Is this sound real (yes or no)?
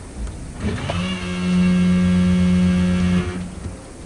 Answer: yes